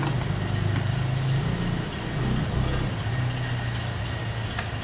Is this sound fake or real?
real